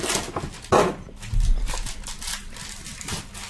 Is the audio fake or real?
fake